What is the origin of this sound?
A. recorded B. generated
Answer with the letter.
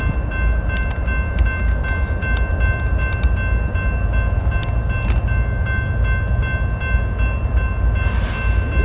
A